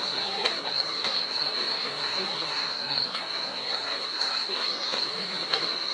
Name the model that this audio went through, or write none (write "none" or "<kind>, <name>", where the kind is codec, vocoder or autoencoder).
codec, SNAC